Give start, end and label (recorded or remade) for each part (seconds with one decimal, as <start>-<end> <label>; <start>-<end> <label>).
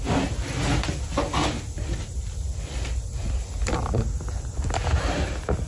0.0-5.7 recorded